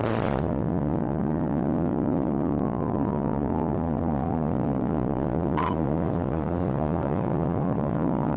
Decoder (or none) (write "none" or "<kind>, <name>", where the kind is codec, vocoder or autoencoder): vocoder, Vocos